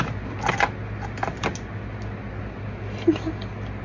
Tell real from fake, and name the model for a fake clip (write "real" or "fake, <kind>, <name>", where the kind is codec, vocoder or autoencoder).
real